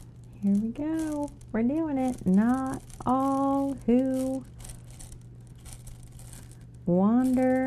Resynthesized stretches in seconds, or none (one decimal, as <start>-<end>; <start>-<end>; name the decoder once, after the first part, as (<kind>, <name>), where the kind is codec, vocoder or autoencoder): none